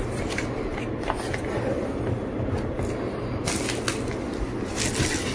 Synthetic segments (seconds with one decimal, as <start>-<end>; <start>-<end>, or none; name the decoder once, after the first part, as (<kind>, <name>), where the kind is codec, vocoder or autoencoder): none